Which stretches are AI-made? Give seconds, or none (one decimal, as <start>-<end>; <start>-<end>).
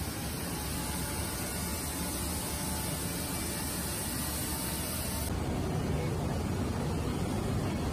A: none